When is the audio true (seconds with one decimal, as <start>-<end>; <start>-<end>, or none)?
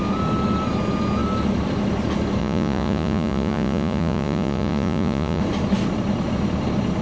0.0-2.4; 5.4-7.0